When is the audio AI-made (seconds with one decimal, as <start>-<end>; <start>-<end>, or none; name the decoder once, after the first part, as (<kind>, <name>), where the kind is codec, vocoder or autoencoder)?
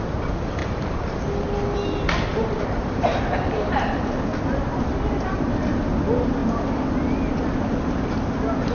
0.6-1.2 (vocoder, BigVGAN v2); 2.3-5.8